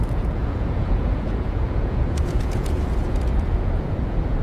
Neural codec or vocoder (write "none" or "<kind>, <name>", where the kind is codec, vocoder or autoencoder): vocoder, Vocos